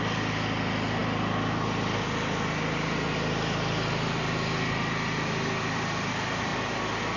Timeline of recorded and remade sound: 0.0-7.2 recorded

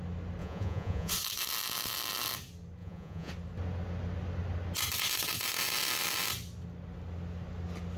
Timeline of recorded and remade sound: 0.0-0.4 recorded; 0.4-1.1 remade; 1.1-2.8 recorded; 2.8-3.3 remade; 3.3-8.0 recorded

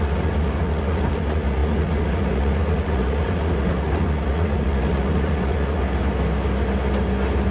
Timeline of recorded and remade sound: 0.0-5.8 remade; 5.8-7.5 recorded

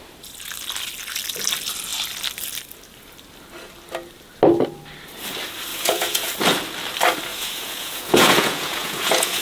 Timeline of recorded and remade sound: 0.0-5.7 recorded; 5.7-6.3 remade; 6.3-7.3 recorded; 7.3-9.4 remade

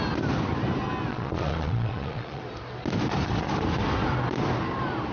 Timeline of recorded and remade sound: 0.0-1.1 recorded; 1.1-2.4 remade; 2.4-5.1 recorded